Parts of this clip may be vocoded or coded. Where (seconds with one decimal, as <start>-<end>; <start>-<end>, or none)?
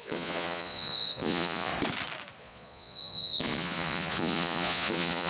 0.0-1.7; 2.4-5.3